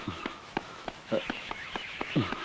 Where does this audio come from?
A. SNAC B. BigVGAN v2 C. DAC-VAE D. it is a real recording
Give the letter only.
C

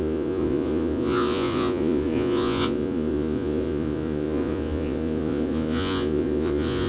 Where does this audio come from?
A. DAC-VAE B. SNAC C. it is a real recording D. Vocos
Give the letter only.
D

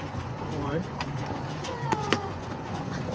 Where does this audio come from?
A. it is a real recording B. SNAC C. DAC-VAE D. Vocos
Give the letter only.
D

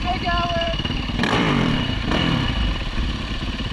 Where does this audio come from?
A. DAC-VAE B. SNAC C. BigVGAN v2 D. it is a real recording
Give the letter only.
C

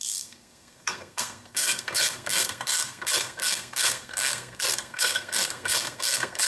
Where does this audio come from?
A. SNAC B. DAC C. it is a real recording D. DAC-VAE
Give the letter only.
A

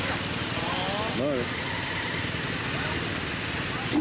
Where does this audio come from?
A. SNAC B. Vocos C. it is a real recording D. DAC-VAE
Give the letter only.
C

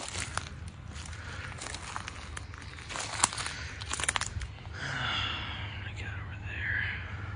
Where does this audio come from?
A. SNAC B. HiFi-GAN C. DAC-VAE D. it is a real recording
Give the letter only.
D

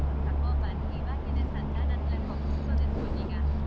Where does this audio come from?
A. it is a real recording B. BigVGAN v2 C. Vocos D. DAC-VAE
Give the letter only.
A